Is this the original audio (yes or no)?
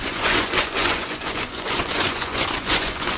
no